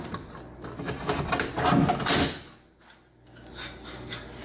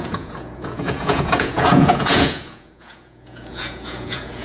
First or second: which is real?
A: first